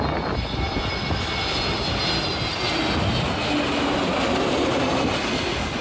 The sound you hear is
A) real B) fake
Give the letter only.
A